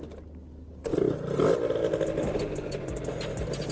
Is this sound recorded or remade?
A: recorded